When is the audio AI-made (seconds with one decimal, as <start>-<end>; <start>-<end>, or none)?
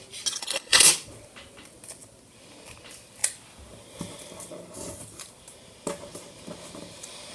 0.4-0.9